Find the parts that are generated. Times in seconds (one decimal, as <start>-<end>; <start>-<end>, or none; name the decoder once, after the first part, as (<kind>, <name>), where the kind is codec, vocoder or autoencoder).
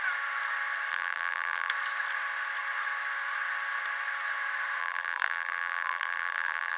0.9-1.7 (vocoder, BigVGAN v2); 4.8-6.8